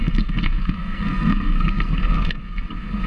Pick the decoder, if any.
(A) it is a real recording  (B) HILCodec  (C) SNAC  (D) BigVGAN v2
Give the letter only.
C